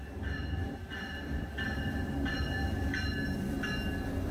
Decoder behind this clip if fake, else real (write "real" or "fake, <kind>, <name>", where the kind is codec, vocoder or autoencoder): real